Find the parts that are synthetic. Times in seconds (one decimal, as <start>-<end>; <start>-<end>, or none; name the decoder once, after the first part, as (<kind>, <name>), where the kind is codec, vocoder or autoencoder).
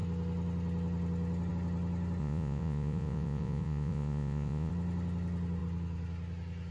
2.2-4.7 (vocoder, Vocos)